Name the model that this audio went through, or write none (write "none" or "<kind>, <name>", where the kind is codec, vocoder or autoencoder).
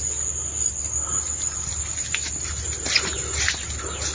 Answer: none